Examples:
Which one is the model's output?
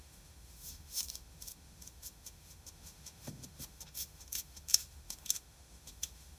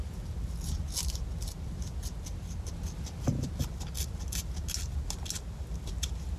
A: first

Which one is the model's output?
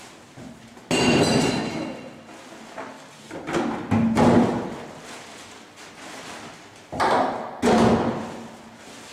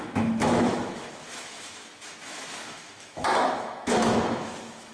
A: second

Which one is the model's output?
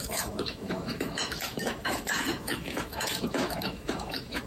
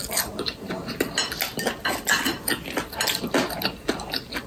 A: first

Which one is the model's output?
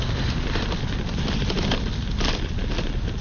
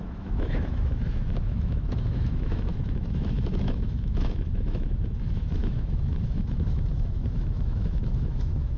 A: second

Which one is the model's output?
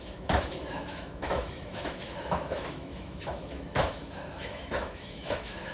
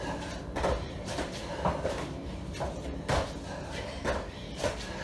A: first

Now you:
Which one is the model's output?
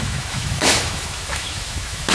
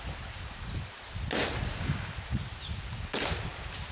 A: first